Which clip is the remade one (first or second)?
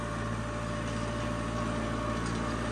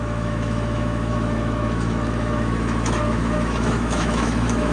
second